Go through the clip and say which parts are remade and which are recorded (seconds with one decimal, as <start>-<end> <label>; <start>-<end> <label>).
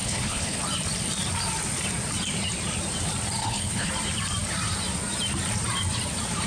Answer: 0.0-0.6 remade; 0.6-3.4 recorded; 3.4-3.9 remade; 3.9-6.5 recorded